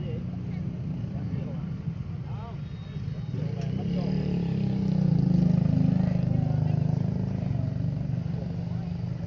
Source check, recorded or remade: recorded